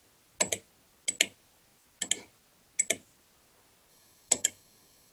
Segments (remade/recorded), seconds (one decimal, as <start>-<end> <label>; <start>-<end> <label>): 0.0-3.9 recorded; 3.9-5.1 remade

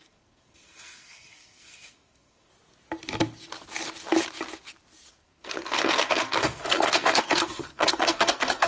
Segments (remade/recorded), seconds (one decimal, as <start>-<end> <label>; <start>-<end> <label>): 0.0-2.5 remade; 2.5-5.1 recorded; 5.1-8.7 remade